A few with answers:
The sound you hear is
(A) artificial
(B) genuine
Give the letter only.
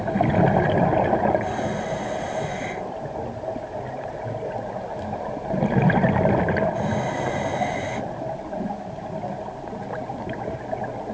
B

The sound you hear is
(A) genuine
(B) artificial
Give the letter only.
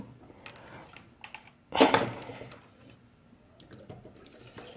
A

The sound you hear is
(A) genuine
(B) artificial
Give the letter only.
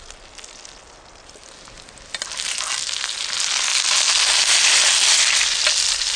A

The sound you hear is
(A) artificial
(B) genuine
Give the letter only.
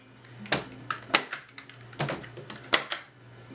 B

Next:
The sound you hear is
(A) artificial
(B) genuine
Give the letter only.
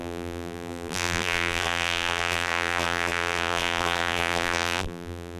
A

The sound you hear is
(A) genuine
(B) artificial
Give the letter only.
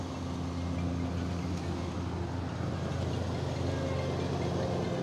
A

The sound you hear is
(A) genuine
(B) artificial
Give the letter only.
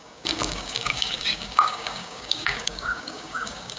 B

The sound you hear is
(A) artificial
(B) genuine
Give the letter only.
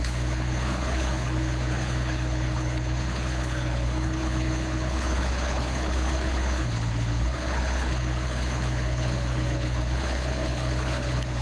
A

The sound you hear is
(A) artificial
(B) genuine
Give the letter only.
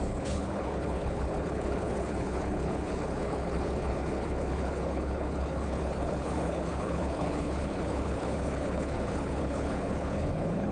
A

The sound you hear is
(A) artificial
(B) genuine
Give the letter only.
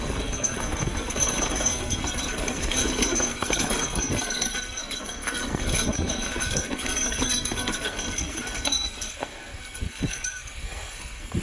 A